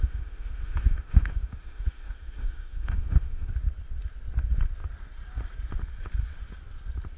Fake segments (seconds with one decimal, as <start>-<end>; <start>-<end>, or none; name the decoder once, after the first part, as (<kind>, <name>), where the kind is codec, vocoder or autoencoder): 0.0-3.5 (autoencoder, DAC-VAE)